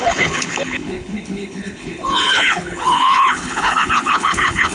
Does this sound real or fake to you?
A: fake